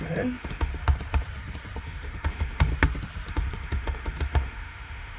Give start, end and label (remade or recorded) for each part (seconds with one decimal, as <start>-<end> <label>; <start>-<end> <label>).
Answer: 0.0-0.7 remade; 0.7-1.8 recorded; 1.8-2.7 remade; 2.7-3.3 recorded; 3.3-5.2 remade